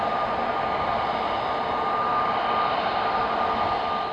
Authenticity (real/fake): real